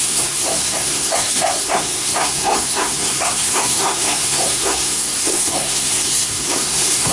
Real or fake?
fake